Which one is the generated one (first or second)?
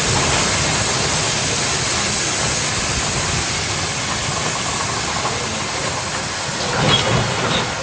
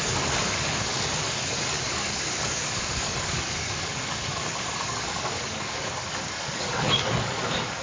second